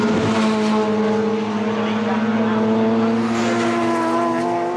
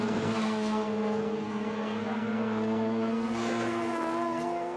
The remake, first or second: second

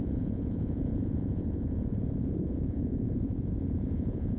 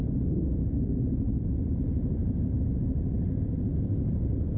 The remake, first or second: first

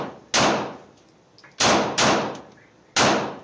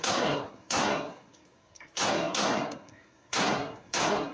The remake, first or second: second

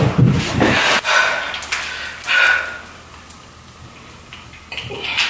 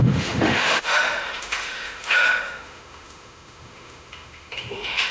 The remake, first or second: second